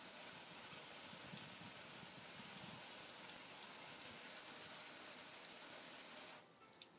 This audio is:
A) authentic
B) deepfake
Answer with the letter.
A